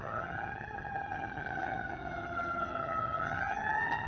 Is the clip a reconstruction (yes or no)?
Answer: yes